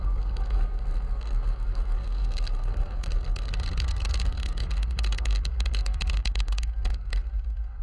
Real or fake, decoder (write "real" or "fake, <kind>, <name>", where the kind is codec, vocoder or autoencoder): fake, codec, SNAC